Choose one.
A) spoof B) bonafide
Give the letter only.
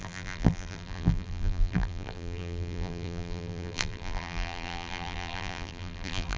A